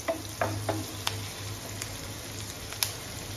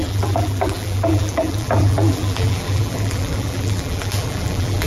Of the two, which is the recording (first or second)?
first